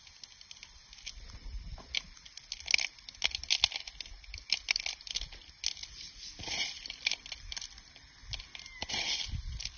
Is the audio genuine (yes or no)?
yes